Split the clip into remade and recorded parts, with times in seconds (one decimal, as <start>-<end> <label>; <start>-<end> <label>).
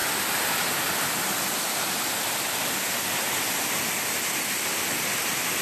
0.0-5.6 recorded